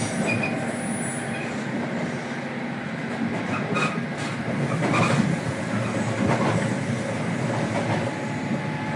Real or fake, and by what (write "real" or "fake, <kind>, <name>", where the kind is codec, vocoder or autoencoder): real